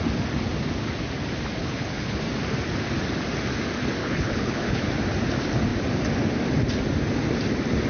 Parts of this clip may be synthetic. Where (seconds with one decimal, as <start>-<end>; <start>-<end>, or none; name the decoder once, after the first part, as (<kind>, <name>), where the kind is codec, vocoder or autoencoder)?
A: 1.6-2.2 (codec, HILCodec); 4.0-4.9